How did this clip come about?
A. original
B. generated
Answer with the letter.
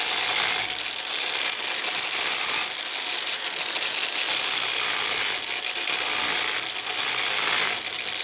A